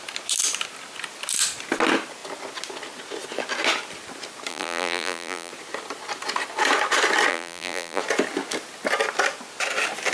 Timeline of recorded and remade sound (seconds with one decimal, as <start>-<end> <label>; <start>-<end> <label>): 0.0-4.5 recorded; 4.5-5.5 remade; 5.5-7.3 recorded; 7.3-8.0 remade; 8.0-10.1 recorded